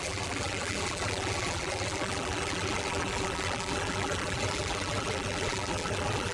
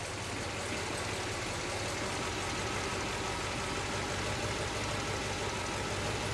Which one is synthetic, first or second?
first